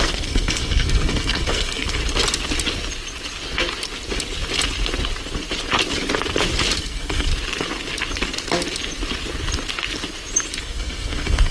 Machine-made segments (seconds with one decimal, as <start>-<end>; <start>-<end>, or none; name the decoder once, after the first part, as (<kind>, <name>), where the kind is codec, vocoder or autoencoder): 0.0-2.0 (codec, SNAC); 6.8-7.3; 10.6-11.5